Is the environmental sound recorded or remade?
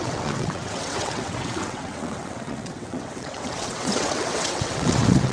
remade